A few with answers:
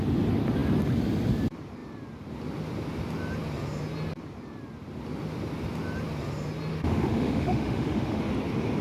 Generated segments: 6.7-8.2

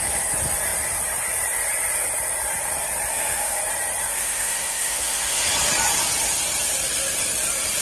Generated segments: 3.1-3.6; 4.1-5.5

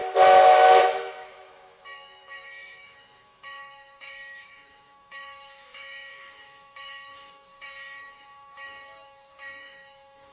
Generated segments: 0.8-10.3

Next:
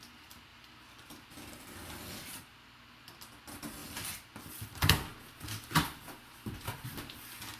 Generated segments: none